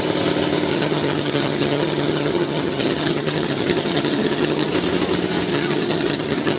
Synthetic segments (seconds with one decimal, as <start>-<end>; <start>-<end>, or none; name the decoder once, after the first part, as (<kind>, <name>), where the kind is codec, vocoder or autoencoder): 0.7-4.7 (vocoder, HiFi-GAN); 5.5-6.6